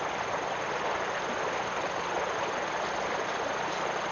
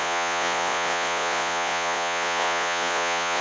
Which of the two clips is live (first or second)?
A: first